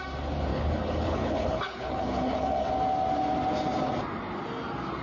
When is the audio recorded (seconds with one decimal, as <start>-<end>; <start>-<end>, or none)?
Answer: 0.0-0.5; 2.7-5.0